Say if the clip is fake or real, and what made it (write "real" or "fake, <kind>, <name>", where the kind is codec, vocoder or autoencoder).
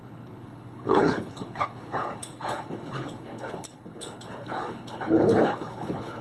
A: fake, codec, HILCodec